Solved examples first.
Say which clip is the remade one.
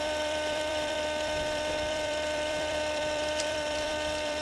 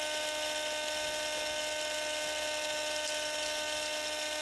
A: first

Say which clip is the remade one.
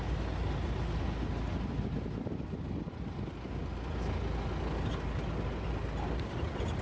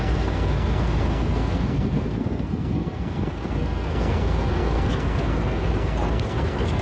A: second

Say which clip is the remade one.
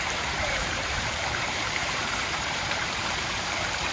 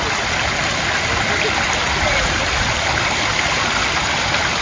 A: first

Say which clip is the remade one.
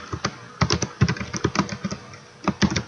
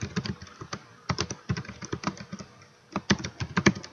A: second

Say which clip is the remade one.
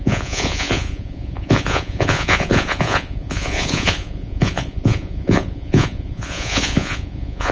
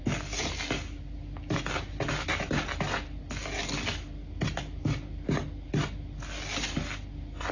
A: first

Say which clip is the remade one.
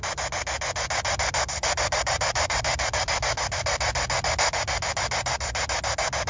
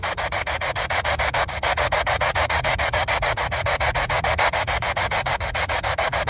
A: second